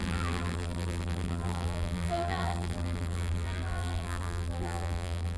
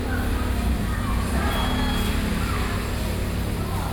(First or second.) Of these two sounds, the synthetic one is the first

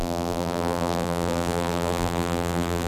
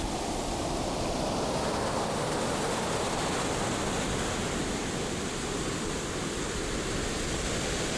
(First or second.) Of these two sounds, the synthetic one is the first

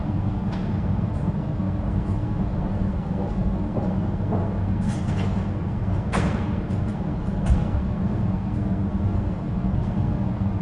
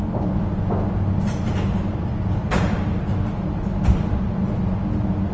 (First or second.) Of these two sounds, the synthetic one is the first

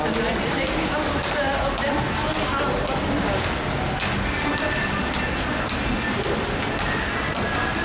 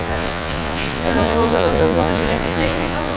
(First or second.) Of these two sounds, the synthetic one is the second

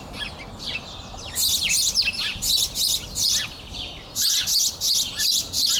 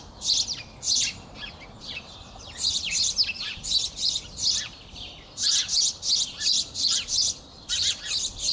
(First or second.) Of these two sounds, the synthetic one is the second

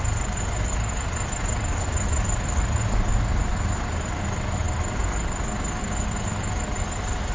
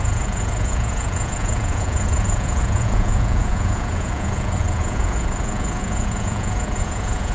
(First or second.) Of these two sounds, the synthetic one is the second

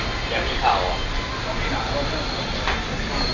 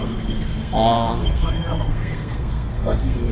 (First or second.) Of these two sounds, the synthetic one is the second